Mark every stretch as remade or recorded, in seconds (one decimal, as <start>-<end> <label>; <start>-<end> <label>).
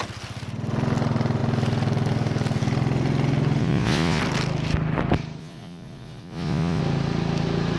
0.0-3.6 recorded; 3.6-4.2 remade; 4.2-5.4 recorded; 5.4-6.8 remade; 6.8-7.8 recorded